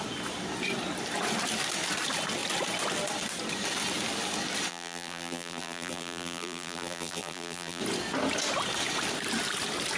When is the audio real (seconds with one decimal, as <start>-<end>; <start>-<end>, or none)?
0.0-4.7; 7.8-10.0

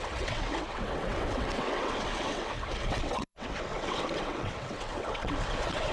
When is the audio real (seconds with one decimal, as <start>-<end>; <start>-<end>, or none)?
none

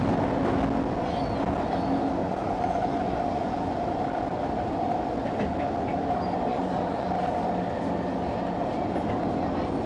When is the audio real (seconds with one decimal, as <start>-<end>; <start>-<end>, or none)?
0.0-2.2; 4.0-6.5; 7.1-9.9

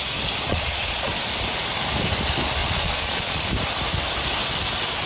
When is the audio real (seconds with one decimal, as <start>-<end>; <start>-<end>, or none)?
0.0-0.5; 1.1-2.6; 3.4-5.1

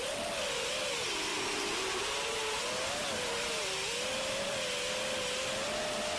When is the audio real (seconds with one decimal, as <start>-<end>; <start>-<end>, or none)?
0.0-1.3; 2.4-6.2